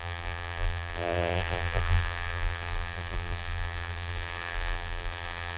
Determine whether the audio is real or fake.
fake